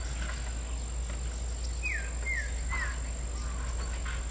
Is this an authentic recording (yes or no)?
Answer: yes